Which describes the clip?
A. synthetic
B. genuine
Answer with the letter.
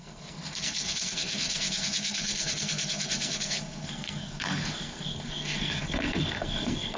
A